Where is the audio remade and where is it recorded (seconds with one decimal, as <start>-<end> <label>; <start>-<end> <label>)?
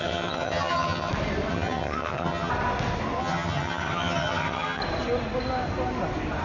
0.0-1.1 remade; 1.1-1.5 recorded; 1.5-2.5 remade; 2.5-3.2 recorded; 3.2-4.8 remade; 4.8-6.4 recorded